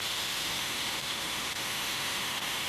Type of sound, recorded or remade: remade